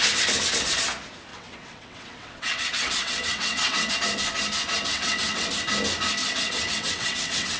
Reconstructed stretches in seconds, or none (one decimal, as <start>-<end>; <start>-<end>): 1.3-3.9; 4.9-5.5; 6.2-7.6